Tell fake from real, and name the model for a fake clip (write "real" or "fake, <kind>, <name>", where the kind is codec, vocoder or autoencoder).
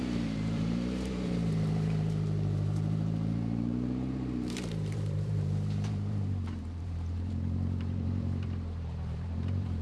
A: fake, vocoder, BigVGAN v2